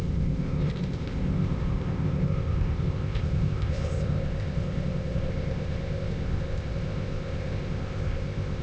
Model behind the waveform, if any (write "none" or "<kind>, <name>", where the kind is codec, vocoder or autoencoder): codec, ZipCodec